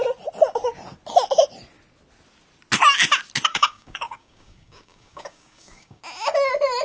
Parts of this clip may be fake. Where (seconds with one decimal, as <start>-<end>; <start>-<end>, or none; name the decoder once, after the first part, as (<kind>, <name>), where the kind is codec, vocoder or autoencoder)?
3.5-6.0 (codec, DAC)